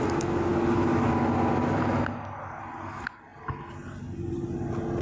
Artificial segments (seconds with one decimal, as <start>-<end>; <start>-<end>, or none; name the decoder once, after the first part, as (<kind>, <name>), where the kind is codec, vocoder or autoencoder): none